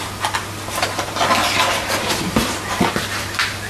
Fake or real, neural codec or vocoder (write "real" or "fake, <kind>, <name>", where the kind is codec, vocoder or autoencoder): real